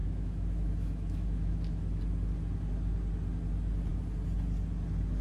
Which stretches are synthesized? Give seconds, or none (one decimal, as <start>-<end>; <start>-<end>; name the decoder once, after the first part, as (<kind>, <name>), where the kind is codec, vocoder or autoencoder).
0.0-2.0 (autoencoder, DAC-VAE)